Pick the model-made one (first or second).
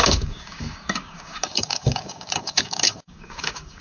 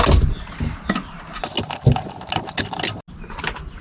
first